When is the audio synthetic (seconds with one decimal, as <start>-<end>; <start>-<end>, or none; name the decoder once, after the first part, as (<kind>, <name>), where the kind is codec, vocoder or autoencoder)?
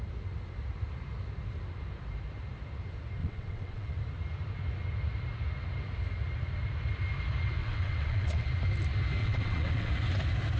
3.2-4.0 (vocoder, WaveNeXt); 7.6-8.5; 9.2-9.9